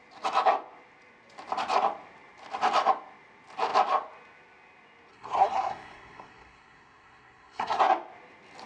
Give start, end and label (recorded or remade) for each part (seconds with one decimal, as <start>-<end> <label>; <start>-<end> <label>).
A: 0.0-5.1 recorded; 5.1-7.8 remade; 7.8-8.7 recorded